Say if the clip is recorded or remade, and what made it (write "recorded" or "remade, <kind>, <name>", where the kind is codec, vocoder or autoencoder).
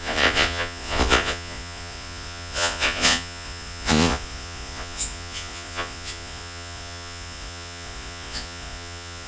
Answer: remade, vocoder, Vocos